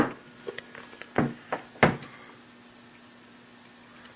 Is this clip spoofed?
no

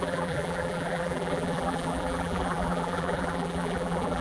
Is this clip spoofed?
yes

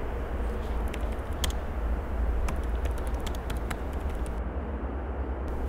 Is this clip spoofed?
no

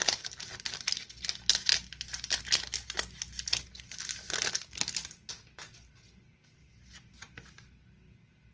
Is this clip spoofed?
no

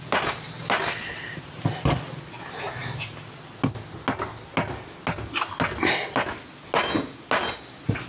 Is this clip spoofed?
no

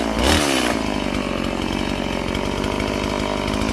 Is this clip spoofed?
no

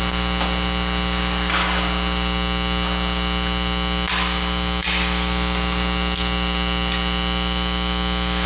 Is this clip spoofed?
no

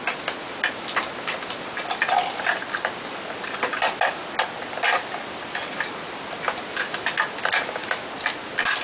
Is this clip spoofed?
no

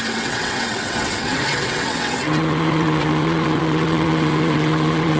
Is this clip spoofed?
yes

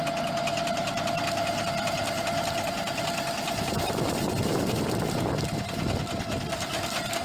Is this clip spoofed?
no